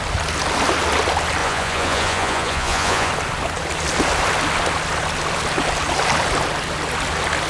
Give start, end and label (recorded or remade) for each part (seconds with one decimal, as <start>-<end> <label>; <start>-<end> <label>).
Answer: 0.0-1.4 recorded; 1.4-3.1 remade; 3.1-7.5 recorded